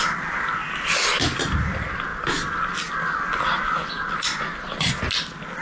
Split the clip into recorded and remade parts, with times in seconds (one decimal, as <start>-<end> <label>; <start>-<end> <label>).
0.0-5.6 recorded